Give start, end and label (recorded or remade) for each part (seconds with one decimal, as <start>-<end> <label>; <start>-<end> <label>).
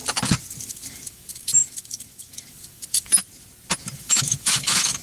0.0-0.6 recorded; 0.6-3.3 remade; 3.3-3.9 recorded; 3.9-5.0 remade